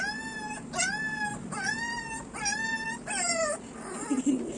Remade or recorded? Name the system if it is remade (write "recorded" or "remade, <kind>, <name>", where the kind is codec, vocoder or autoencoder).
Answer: recorded